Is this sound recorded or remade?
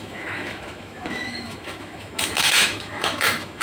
remade